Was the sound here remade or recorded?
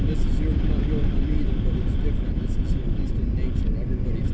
recorded